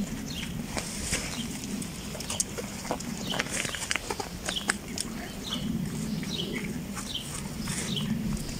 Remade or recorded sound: recorded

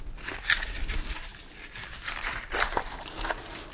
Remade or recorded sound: recorded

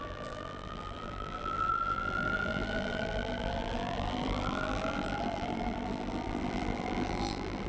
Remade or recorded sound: remade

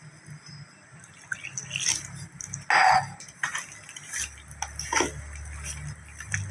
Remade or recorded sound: recorded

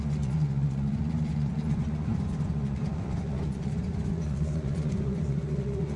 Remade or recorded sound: remade